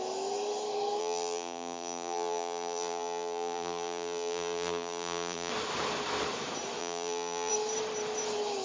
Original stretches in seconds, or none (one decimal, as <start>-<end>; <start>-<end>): 0.0-1.0; 5.5-6.8; 7.5-8.6